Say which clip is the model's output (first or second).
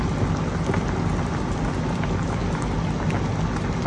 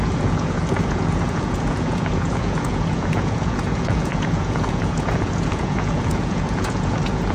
second